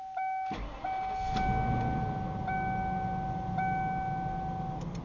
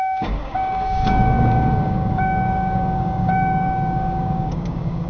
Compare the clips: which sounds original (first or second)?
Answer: first